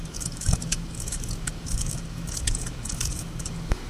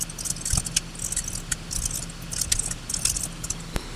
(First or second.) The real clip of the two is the second